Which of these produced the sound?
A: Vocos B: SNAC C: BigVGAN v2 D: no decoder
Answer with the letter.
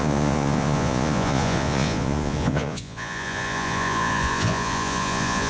A